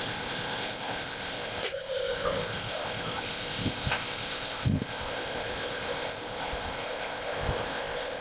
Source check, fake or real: fake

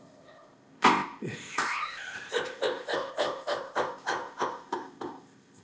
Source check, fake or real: fake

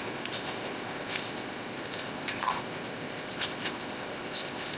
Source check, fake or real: fake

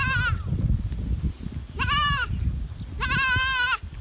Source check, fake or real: real